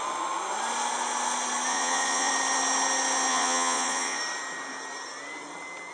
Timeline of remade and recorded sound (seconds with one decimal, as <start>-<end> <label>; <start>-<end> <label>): 0.0-1.7 recorded; 1.7-2.3 remade; 2.3-3.3 recorded; 3.3-4.2 remade; 4.2-5.9 recorded